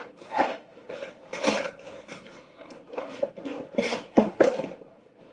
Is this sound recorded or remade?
remade